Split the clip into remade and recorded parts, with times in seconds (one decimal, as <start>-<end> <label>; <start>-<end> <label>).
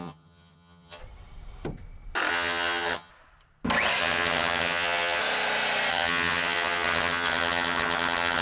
0.0-1.0 remade; 1.0-2.3 recorded; 2.3-3.1 remade; 3.1-4.0 recorded; 4.0-5.2 remade; 5.2-5.9 recorded; 5.9-8.4 remade